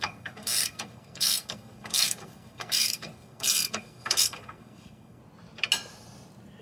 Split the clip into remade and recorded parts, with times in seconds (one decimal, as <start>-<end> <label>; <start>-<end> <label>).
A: 0.0-5.2 remade; 5.2-6.6 recorded